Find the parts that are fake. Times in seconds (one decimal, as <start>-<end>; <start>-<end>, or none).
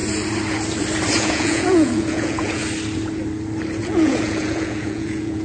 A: 1.1-2.6; 3.8-5.4